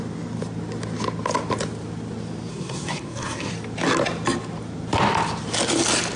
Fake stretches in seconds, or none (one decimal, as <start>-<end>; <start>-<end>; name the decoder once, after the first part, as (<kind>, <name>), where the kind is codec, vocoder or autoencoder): 2.5-3.5 (codec, SNAC)